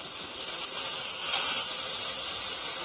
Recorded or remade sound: recorded